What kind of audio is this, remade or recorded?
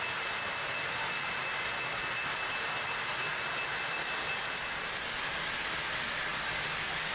recorded